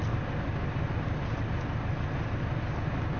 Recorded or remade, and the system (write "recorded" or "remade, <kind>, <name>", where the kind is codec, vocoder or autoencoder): recorded